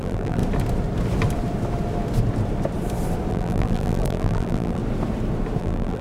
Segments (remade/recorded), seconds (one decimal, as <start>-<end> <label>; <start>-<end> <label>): 0.0-0.4 remade; 0.4-3.3 recorded; 3.3-4.8 remade; 4.8-5.6 recorded; 5.6-6.0 remade